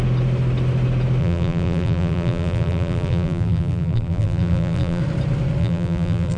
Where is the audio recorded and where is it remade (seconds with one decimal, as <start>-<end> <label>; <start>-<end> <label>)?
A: 0.0-1.2 recorded; 1.2-5.0 remade; 5.0-5.6 recorded; 5.6-6.4 remade